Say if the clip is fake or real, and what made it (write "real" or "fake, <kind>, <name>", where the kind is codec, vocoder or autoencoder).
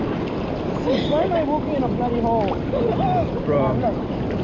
real